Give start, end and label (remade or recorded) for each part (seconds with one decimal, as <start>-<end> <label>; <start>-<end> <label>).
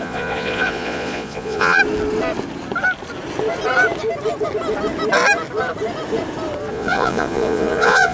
0.0-1.8 remade; 1.8-6.7 recorded; 6.7-8.1 remade